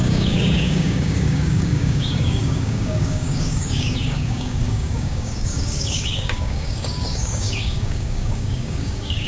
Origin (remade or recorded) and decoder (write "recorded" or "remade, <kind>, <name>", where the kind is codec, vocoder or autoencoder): remade, codec, DAC